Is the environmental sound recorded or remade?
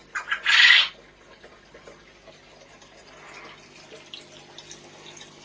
recorded